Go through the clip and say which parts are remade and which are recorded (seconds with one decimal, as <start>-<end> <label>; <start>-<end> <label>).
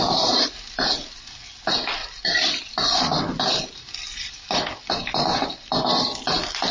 0.0-6.7 recorded